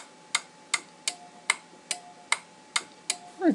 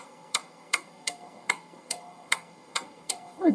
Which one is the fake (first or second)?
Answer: second